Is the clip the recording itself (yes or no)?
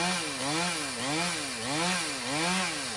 yes